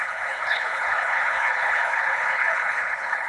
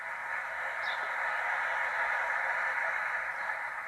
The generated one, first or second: first